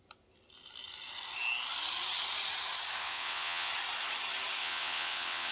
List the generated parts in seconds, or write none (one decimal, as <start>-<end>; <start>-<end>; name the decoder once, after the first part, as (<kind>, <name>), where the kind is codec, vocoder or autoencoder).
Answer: 3.0-3.7 (vocoder, WaveNeXt); 4.6-5.5